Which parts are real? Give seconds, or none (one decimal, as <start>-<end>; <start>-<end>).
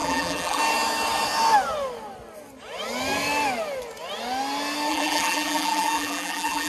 0.6-4.9